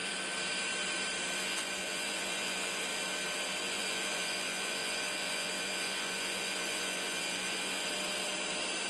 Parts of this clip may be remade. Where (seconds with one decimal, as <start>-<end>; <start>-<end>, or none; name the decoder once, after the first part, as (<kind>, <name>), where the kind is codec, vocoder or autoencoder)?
1.4-2.8 (vocoder, Vocos); 3.6-7.9